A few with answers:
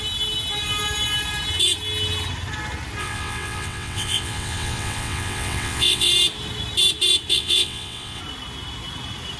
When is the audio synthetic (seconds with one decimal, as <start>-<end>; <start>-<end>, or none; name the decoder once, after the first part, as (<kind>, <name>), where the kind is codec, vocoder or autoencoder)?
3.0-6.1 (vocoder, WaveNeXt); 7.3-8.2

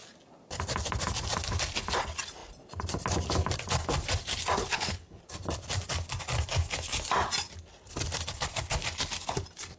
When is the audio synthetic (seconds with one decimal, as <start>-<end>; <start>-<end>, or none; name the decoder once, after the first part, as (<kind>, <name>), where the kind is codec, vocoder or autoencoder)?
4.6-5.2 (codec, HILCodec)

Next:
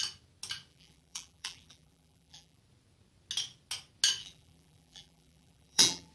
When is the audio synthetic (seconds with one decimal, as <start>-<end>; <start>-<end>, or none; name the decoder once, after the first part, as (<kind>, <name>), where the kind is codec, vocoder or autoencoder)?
0.7-2.6 (vocoder, BigVGAN v2); 4.2-6.1

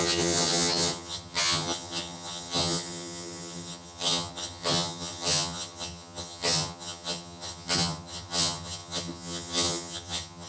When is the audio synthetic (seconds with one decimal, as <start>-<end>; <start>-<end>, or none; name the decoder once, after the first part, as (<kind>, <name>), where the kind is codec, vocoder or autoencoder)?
0.0-10.5 (vocoder, HiFi-GAN)